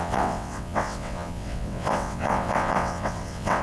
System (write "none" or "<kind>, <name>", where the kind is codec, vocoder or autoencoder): vocoder, WaveNeXt